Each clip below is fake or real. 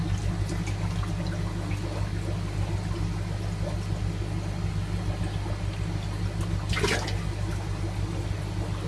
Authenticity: real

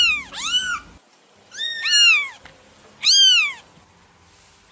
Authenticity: real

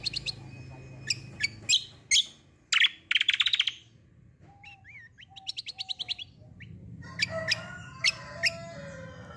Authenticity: real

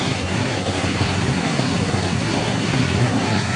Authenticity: fake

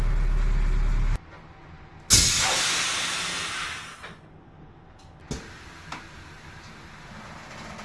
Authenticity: real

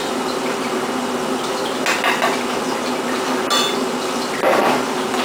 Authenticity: real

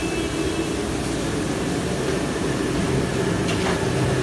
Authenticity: real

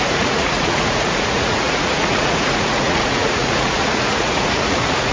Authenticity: fake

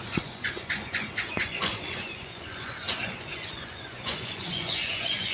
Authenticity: fake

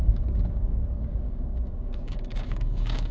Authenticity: fake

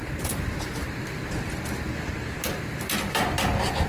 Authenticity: real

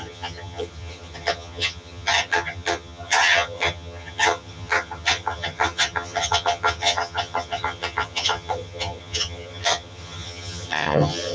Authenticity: fake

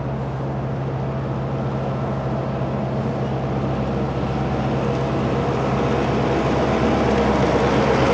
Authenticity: real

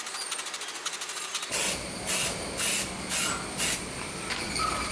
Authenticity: real